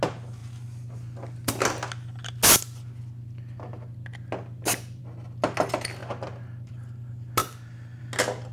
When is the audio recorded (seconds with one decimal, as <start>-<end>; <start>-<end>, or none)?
0.0-7.4; 8.0-8.5